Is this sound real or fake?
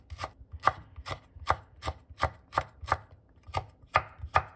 real